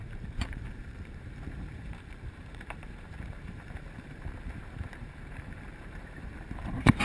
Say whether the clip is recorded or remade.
remade